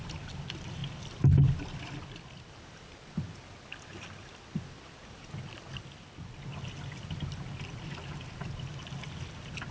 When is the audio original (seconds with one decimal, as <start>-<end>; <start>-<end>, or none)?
0.0-9.7